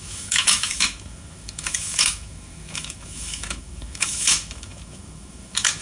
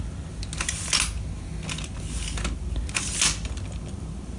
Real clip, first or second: second